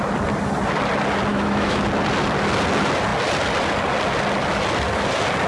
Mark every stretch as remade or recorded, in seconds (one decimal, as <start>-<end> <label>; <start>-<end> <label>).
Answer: 0.0-1.3 recorded; 1.3-1.8 remade; 1.8-5.5 recorded